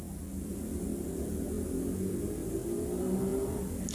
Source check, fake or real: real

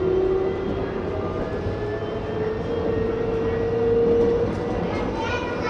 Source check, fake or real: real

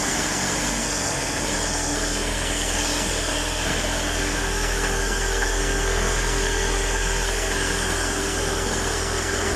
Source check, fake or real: fake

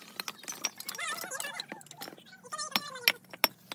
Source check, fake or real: real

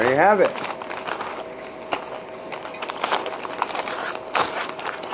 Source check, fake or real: real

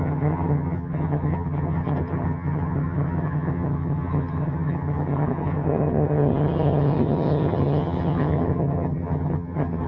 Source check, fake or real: fake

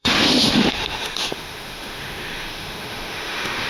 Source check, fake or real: fake